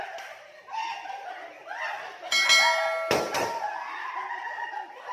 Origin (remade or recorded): recorded